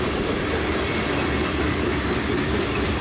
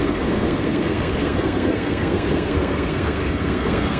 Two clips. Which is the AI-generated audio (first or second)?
second